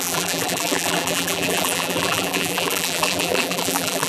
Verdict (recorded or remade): remade